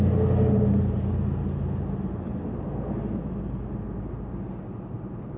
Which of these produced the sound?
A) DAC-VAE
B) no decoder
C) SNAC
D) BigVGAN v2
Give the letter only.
B